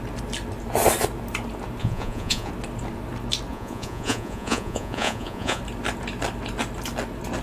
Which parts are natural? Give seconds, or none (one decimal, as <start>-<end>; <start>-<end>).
0.0-1.8; 2.5-3.5; 5.6-7.4